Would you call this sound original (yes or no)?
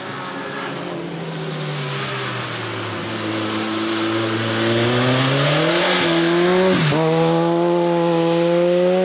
yes